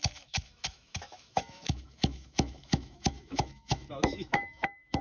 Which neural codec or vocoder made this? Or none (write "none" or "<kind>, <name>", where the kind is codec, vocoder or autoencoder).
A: autoencoder, DAC-VAE